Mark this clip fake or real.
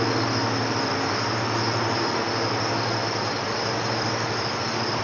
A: real